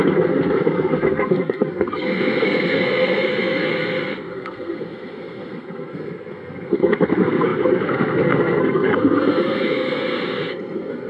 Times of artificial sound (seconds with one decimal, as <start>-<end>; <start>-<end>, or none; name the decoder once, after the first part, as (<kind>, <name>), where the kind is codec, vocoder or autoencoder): 0.0-11.1 (codec, SNAC)